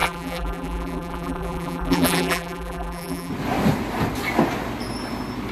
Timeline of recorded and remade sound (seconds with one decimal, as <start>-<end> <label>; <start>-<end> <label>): 0.0-3.3 remade; 3.3-5.5 recorded